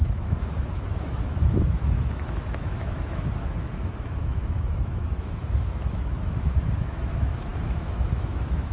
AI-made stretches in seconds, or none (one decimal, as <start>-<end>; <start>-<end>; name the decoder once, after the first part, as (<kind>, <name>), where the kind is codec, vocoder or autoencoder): 0.0-8.7 (autoencoder, DAC-VAE)